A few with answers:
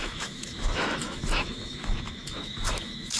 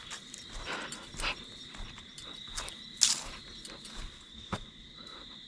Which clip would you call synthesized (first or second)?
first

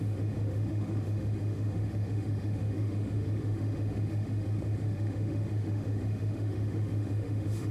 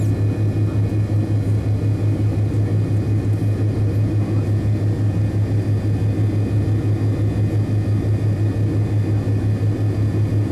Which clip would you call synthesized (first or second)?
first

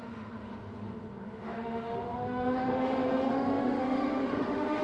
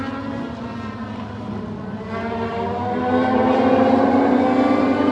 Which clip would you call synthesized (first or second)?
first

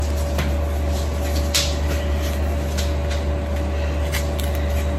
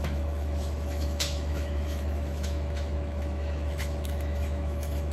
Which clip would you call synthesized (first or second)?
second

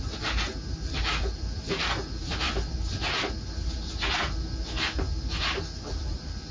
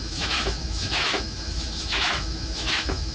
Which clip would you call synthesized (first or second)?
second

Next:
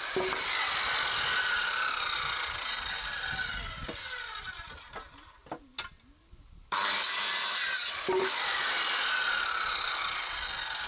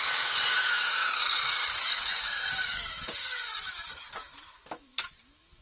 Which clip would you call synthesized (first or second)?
second